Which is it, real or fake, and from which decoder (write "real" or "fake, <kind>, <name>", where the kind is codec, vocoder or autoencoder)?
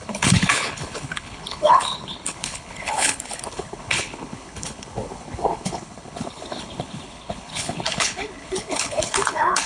fake, codec, HILCodec